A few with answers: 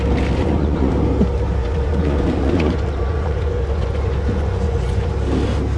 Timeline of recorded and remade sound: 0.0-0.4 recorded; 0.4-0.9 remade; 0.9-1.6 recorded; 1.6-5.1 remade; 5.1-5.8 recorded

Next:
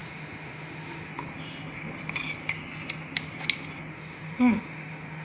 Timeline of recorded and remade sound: 0.0-1.1 remade; 1.1-3.9 recorded; 3.9-5.2 remade

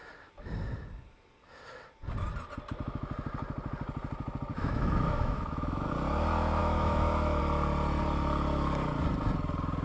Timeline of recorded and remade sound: 0.0-4.5 recorded; 4.5-5.9 remade; 5.9-6.6 recorded; 6.6-7.4 remade; 7.4-9.8 recorded

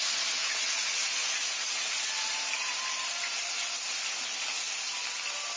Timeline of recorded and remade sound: 0.0-0.4 recorded; 0.4-2.0 remade; 2.0-5.6 recorded

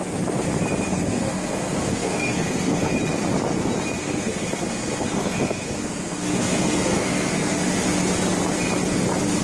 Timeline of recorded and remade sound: 0.0-0.9 recorded; 0.9-2.9 remade; 2.9-4.0 recorded; 4.0-7.5 remade; 7.5-9.4 recorded